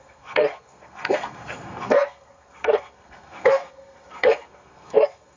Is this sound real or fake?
fake